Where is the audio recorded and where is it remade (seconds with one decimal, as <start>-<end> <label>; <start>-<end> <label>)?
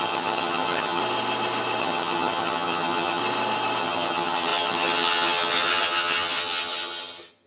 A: 0.0-1.0 remade; 1.0-1.8 recorded; 1.8-3.2 remade; 3.2-3.8 recorded; 3.8-7.5 remade